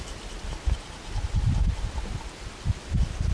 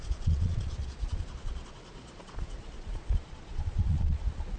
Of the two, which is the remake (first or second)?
second